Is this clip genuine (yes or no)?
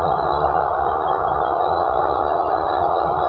no